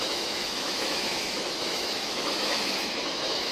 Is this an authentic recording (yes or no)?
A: no